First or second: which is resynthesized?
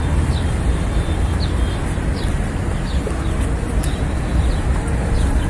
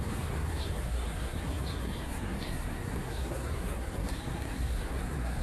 second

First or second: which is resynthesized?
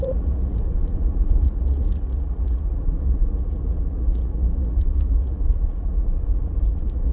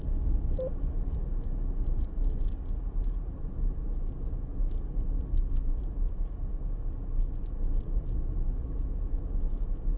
first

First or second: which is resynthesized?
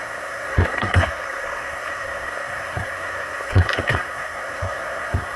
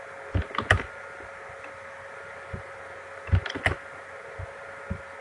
first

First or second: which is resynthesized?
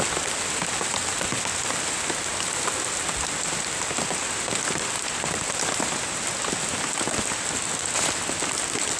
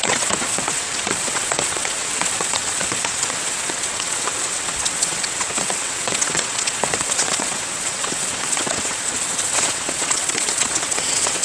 second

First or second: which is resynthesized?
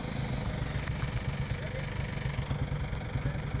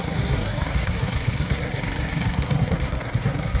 second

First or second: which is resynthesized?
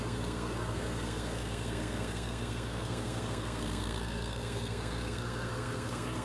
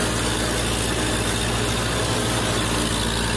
first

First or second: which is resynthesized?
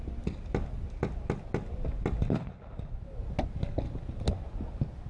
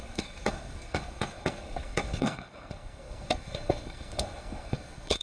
second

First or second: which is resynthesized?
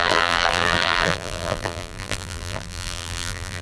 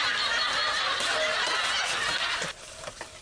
first